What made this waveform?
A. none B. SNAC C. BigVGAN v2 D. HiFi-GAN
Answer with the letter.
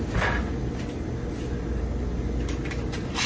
A